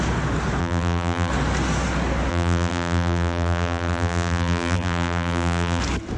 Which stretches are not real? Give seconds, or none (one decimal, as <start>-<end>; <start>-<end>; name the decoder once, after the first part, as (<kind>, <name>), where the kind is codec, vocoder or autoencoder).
0.6-1.3 (vocoder, BigVGAN v2); 2.3-5.8